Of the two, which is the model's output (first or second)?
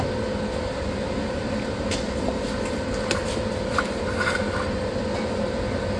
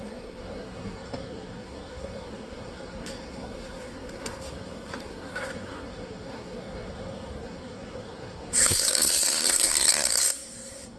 second